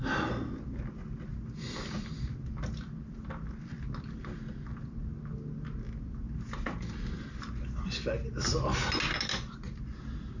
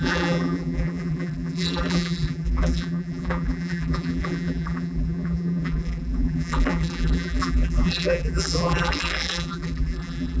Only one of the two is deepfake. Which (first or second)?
second